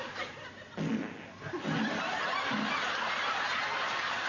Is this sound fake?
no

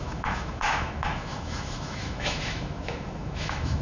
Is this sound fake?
yes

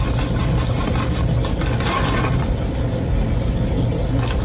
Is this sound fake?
no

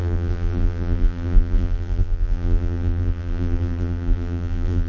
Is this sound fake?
yes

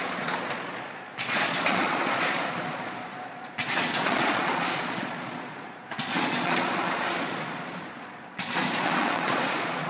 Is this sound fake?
yes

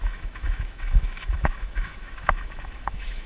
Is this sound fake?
yes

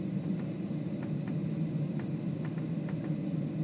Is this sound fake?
no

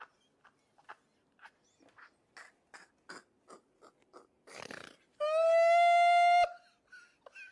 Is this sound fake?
no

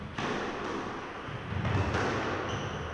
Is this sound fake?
no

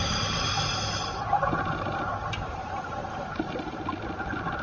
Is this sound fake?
no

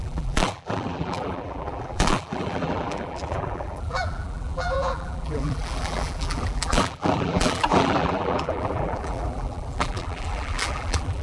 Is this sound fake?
yes